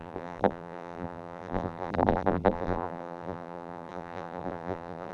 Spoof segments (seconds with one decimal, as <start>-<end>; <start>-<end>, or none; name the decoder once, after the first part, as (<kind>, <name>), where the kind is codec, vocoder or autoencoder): 0.0-5.1 (vocoder, BigVGAN v2)